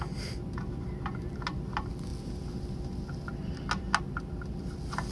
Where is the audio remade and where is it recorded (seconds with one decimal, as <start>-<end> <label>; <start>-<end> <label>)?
0.0-5.1 recorded